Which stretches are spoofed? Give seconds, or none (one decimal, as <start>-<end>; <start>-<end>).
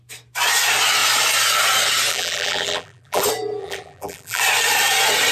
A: 2.1-3.2; 3.6-4.4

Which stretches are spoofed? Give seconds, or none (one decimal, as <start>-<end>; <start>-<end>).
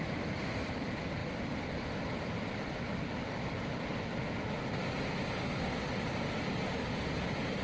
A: none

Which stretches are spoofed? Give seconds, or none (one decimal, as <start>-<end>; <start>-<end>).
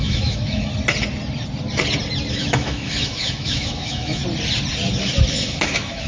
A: 0.0-0.7; 2.3-4.2; 5.3-6.1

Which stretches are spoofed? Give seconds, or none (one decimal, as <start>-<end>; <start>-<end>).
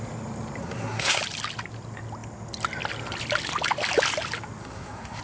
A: 0.6-1.2; 4.6-5.2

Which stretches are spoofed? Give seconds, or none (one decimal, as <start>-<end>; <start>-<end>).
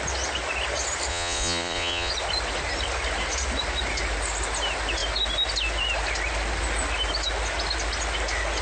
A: 1.1-2.1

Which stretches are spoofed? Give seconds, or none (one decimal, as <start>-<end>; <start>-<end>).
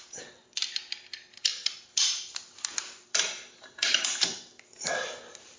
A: none